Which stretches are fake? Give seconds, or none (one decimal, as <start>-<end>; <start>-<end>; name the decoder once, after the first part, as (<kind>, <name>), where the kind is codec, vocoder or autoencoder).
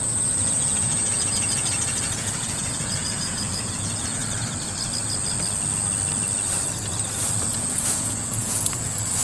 0.0-4.2 (vocoder, Vocos); 7.5-9.2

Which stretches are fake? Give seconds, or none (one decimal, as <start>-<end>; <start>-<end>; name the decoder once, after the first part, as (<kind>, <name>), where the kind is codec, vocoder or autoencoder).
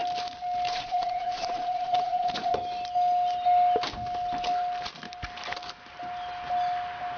0.7-2.6 (vocoder, Vocos)